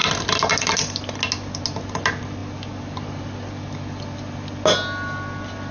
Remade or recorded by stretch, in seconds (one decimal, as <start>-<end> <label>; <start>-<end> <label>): 0.0-5.7 recorded